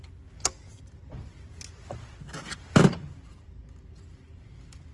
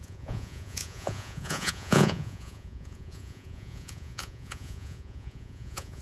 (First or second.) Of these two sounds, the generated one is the second